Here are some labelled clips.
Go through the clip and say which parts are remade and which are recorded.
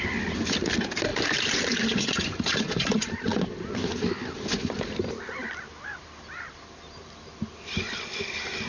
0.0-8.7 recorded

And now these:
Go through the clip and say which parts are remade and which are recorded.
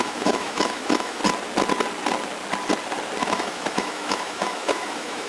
0.0-1.2 remade; 1.2-3.2 recorded; 3.2-5.3 remade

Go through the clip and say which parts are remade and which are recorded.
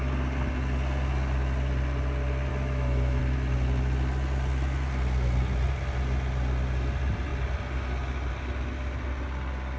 0.0-2.5 recorded; 2.5-3.2 remade; 3.2-9.8 recorded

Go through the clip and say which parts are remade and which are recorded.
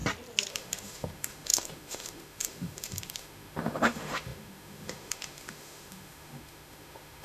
0.0-0.5 recorded; 0.5-7.2 remade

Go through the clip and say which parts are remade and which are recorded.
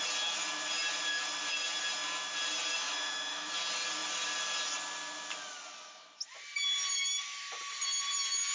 0.0-2.8 recorded; 2.8-3.5 remade; 3.5-8.5 recorded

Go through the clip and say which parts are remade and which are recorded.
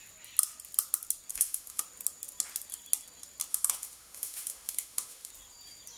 0.0-1.3 recorded; 1.3-1.8 remade; 1.8-3.5 recorded; 3.5-5.3 remade; 5.3-6.0 recorded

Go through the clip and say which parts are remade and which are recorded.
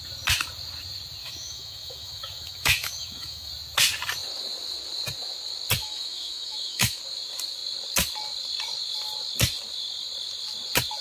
0.0-1.2 recorded; 1.2-3.5 remade; 3.5-5.8 recorded; 5.8-7.0 remade; 7.0-11.0 recorded